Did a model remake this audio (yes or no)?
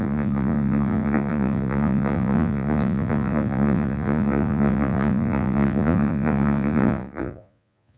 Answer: yes